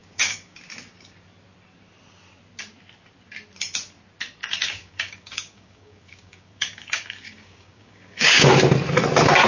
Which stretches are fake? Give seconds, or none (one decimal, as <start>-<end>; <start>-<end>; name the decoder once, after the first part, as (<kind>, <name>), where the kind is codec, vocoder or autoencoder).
0.0-0.6 (codec, DAC); 4.4-8.5

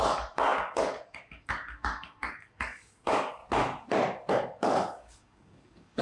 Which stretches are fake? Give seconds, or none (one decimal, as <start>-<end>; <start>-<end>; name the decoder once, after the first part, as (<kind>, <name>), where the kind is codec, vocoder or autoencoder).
0.0-3.4 (codec, DAC); 4.3-6.0

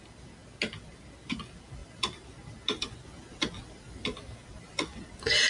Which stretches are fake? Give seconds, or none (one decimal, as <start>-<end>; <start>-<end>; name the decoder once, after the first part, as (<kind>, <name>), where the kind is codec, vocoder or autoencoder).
none

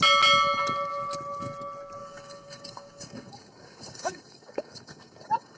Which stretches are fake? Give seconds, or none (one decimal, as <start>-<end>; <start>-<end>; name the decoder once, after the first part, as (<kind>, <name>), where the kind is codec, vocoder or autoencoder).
2.0-5.6 (codec, DAC)

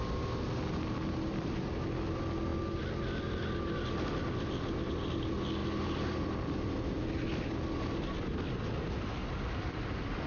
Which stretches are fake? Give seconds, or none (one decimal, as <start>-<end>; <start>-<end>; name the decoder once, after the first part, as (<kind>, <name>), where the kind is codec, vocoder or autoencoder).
none